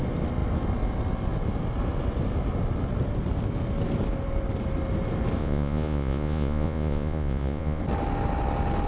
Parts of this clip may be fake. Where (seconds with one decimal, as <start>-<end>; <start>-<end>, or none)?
5.4-7.8